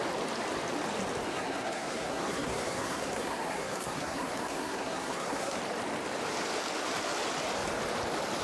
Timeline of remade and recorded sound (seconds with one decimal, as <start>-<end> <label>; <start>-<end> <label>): 0.0-1.3 recorded; 1.3-5.6 remade; 5.6-8.4 recorded